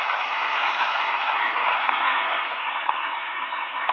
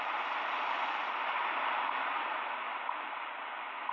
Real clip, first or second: second